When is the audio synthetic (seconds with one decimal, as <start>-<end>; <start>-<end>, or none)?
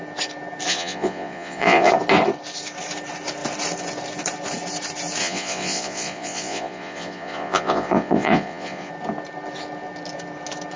0.7-1.9; 5.2-8.9